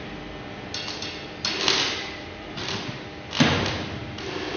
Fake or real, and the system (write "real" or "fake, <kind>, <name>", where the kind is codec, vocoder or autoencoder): real